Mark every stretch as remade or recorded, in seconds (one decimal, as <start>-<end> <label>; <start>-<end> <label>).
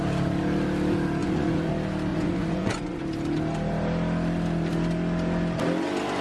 0.0-1.2 recorded; 1.2-1.7 remade; 1.7-2.1 recorded; 2.1-3.0 remade; 3.0-6.2 recorded